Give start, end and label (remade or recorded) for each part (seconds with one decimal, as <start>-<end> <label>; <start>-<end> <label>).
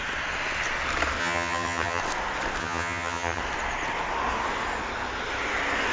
0.0-1.2 recorded; 1.2-2.0 remade; 2.0-2.6 recorded; 2.6-3.4 remade; 3.4-5.9 recorded